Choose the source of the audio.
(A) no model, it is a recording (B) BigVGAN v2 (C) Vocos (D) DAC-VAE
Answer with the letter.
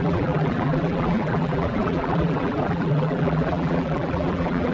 B